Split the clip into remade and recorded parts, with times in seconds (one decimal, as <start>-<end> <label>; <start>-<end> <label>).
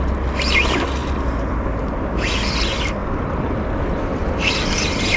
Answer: 0.0-5.2 recorded